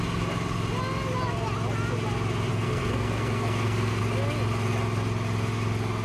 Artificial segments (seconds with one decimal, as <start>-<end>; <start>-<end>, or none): 2.5-4.0